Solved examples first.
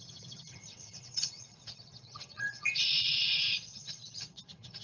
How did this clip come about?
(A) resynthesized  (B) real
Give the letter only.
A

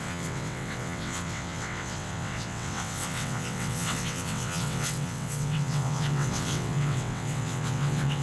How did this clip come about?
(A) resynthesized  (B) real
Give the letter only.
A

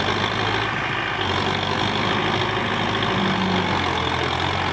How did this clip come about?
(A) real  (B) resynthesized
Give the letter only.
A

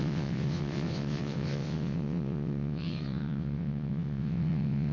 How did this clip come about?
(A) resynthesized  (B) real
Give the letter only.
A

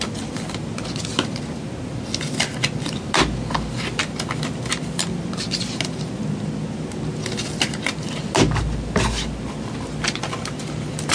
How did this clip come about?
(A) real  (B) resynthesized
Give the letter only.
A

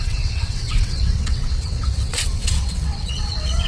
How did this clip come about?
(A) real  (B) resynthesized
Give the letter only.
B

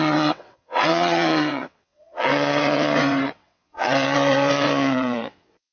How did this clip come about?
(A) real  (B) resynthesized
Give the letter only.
B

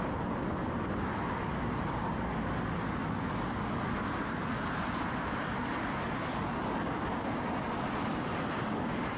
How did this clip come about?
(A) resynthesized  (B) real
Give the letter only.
B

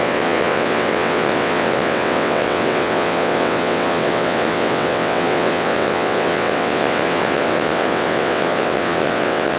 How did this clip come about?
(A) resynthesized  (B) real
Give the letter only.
A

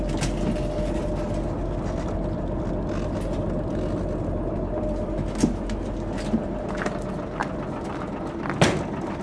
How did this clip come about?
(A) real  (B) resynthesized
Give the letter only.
A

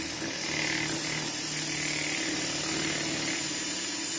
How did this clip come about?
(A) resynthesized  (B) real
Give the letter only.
B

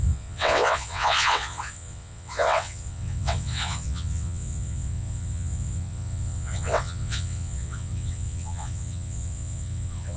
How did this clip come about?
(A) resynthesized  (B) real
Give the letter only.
A